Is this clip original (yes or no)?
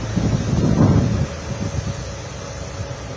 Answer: yes